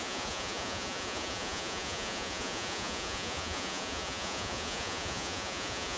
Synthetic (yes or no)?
yes